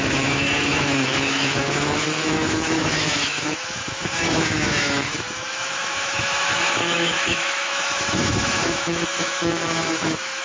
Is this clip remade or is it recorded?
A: remade